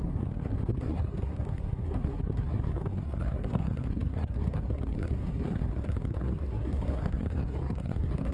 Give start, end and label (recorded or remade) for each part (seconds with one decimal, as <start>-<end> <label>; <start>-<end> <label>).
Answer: 0.0-8.3 remade